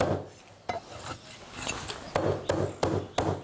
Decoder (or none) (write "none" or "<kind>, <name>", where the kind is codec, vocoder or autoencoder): none